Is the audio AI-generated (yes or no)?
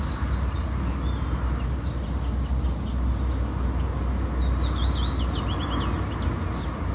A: no